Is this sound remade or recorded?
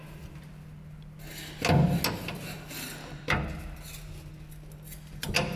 recorded